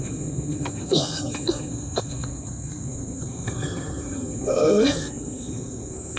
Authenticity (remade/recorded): remade